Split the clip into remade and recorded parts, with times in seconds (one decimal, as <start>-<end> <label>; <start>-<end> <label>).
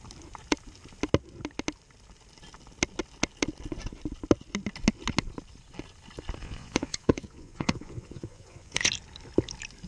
0.0-6.4 recorded; 6.4-8.9 remade; 8.9-9.9 recorded